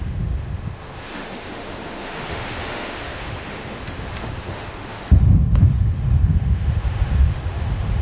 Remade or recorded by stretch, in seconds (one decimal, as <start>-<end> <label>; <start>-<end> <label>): 0.0-8.0 remade